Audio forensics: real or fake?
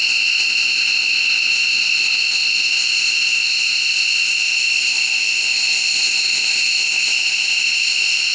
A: fake